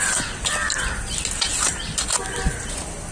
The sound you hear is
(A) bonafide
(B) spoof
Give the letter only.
A